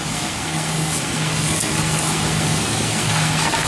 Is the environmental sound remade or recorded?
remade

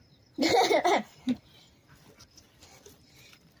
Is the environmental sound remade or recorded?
remade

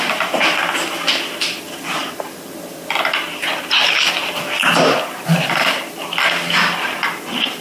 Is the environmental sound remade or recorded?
remade